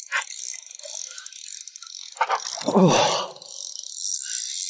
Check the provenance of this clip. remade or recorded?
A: recorded